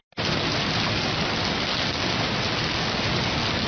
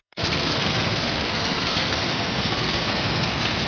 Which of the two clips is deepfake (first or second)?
second